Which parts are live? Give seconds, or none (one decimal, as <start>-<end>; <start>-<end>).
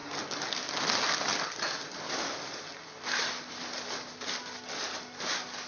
0.0-5.7